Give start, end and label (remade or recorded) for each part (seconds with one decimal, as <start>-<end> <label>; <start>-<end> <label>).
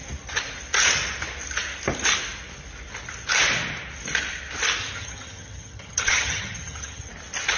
0.0-4.8 recorded; 4.8-7.1 remade; 7.1-7.6 recorded